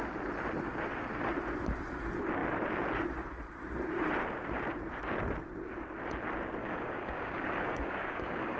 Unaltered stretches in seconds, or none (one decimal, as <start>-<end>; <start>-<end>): 0.0-6.6